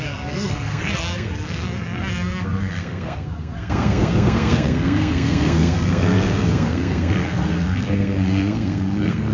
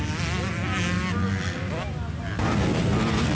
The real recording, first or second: second